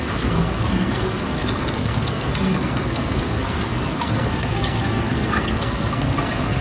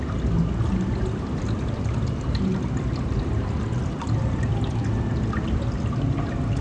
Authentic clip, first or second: second